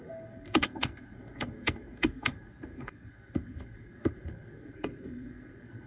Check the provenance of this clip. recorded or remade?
remade